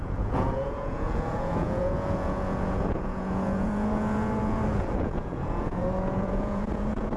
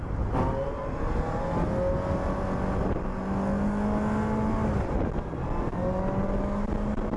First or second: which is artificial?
first